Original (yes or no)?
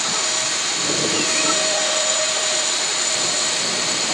no